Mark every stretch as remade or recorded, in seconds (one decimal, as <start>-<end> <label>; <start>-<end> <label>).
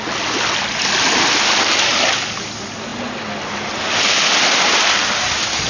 0.0-5.7 recorded